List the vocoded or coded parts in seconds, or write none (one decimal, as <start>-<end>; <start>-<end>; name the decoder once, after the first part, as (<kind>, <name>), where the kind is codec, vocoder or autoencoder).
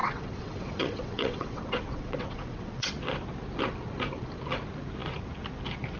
0.0-2.9 (vocoder, WaveNeXt)